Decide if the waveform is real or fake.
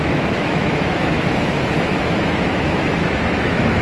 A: fake